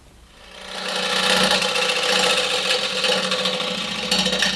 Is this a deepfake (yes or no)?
no